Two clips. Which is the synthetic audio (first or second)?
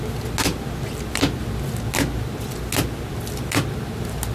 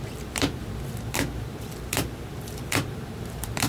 second